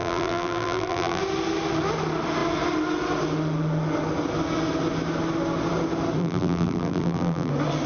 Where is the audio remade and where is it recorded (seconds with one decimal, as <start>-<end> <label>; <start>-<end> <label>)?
0.0-1.2 remade; 1.2-6.2 recorded; 6.2-7.5 remade; 7.5-7.9 recorded